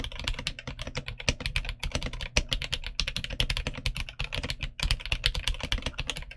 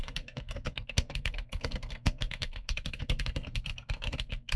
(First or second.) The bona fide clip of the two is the first